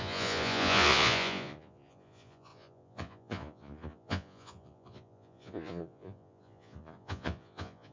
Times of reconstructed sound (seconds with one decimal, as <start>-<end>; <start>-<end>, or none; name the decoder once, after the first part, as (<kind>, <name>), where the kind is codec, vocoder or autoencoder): 0.0-7.9 (vocoder, Vocos)